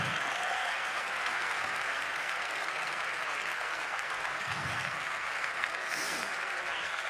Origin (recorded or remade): remade